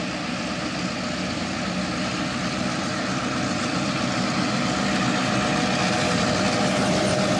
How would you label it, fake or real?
real